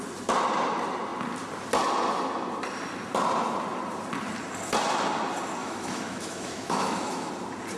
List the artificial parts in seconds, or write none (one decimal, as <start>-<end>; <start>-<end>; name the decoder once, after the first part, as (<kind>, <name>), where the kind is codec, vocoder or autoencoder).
5.6-7.3 (autoencoder, DAC-VAE)